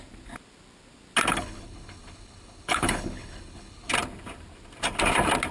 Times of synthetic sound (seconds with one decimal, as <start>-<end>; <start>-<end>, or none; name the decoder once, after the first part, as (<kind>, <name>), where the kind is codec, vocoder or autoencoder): 1.3-3.9 (codec, HILCodec)